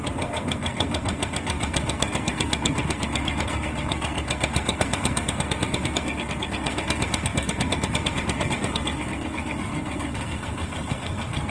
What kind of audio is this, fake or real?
fake